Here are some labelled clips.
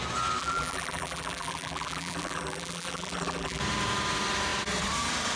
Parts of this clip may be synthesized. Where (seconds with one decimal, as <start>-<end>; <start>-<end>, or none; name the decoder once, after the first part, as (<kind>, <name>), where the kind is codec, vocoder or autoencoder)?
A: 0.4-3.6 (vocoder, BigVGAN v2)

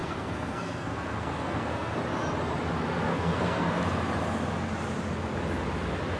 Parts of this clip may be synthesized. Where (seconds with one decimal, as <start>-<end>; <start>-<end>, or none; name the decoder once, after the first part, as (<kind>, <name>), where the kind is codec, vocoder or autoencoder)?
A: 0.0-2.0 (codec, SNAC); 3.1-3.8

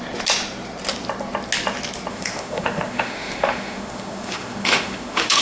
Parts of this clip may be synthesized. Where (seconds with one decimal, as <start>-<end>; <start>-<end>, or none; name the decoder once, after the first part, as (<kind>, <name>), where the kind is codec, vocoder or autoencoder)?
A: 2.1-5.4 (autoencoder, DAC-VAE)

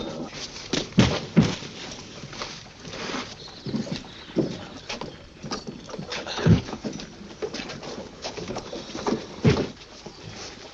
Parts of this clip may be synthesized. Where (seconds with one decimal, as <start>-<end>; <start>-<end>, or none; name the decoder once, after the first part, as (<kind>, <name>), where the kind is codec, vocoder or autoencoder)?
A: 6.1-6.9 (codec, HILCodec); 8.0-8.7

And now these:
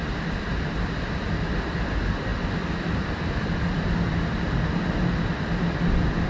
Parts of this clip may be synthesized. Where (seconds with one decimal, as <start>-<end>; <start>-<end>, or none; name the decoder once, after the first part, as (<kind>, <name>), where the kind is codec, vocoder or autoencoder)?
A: none

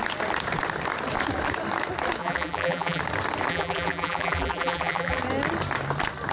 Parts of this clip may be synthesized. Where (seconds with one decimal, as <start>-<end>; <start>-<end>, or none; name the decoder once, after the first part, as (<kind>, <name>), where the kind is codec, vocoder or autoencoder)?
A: 2.2-3.0 (vocoder, BigVGAN v2); 3.5-5.2

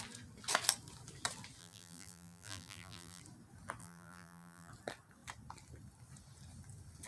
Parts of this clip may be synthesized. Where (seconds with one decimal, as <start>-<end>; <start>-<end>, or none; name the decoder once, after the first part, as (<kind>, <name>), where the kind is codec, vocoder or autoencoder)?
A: 1.6-3.2 (vocoder, BigVGAN v2); 3.8-4.7